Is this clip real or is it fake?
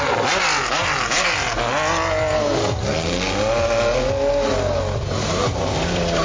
real